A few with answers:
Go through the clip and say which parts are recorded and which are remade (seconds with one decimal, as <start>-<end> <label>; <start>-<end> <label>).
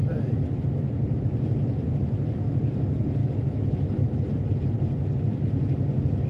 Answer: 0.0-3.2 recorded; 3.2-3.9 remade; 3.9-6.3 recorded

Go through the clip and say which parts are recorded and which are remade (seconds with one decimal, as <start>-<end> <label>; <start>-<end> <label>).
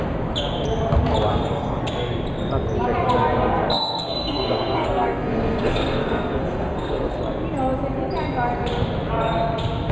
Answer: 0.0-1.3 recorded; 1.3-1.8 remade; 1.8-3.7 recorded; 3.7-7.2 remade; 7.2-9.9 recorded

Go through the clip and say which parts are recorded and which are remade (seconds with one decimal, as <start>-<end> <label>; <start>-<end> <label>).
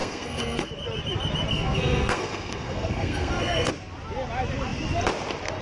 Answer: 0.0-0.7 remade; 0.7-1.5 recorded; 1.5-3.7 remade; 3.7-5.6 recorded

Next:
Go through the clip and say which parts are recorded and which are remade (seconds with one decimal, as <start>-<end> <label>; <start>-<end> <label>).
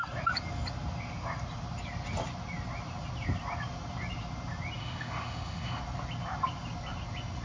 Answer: 0.0-4.8 recorded; 4.8-5.8 remade; 5.8-7.4 recorded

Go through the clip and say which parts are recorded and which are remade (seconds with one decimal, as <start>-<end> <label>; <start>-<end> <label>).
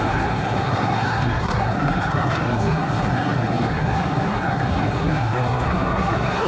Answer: 0.0-6.5 remade